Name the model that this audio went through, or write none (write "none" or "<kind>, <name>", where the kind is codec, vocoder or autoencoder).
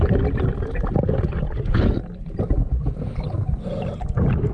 none